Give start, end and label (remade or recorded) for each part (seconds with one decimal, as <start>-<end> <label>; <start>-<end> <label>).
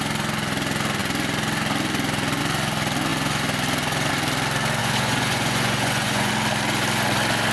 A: 0.0-4.8 recorded; 4.8-6.3 remade; 6.3-7.5 recorded